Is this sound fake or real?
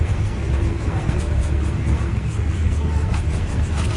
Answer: fake